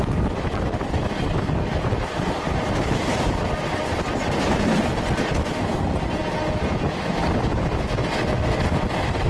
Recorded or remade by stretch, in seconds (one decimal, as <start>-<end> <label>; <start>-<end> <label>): 0.0-6.2 remade; 6.2-8.5 recorded; 8.5-9.3 remade